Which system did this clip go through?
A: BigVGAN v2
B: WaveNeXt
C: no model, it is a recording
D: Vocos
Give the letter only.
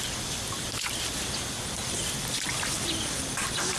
C